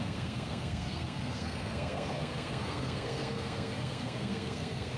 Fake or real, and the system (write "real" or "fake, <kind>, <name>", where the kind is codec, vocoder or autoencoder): fake, codec, SNAC